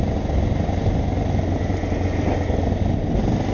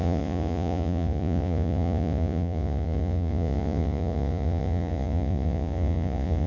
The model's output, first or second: second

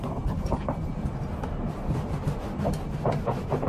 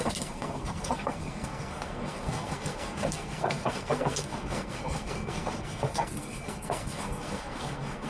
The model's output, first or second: second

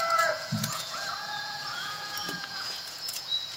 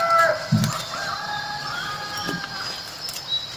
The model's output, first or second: first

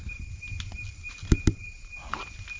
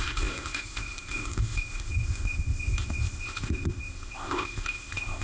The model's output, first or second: second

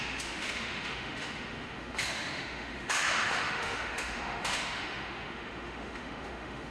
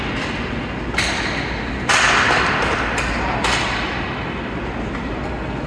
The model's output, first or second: first